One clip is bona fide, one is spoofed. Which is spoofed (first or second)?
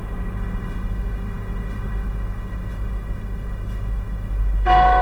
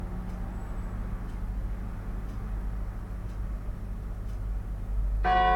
first